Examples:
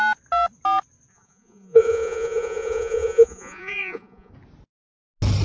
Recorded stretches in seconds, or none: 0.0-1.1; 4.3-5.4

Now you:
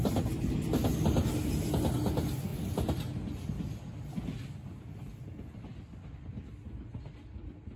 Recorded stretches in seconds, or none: 0.0-7.8

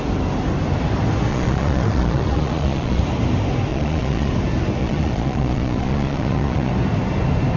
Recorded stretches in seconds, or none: 0.0-1.3; 3.0-3.7; 4.3-4.8; 6.7-7.6